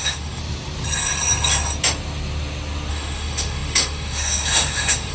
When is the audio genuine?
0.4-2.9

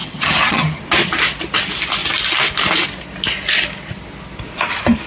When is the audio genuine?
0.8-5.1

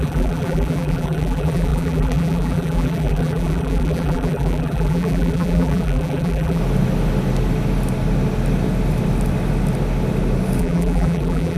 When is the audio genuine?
6.6-10.6

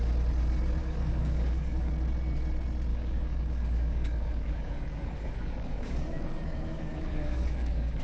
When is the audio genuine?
0.0-0.8; 1.9-2.9

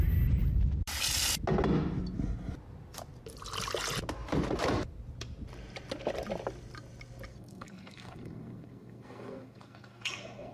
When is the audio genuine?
0.0-7.3

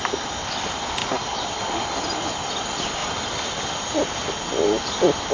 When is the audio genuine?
0.0-5.3